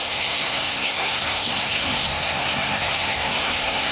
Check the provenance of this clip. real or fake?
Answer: fake